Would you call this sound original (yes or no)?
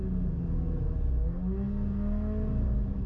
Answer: yes